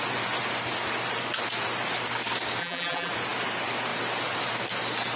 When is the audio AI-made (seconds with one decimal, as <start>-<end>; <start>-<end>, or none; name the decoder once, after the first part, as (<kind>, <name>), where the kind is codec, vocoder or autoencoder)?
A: 2.6-3.1 (vocoder, BigVGAN v2)